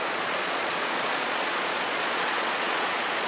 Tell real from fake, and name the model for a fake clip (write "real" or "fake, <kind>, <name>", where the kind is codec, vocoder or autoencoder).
fake, vocoder, Vocos